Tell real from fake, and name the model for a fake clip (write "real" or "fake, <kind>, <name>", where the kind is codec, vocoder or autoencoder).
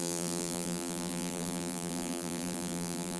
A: fake, vocoder, BigVGAN v2